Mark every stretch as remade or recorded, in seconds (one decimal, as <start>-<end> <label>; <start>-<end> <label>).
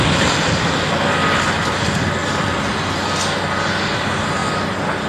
0.0-5.1 recorded